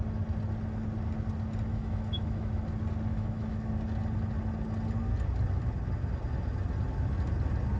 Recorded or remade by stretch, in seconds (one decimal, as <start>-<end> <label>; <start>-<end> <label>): 0.0-1.7 recorded; 1.7-2.5 remade; 2.5-3.1 recorded; 3.1-3.7 remade; 3.7-7.8 recorded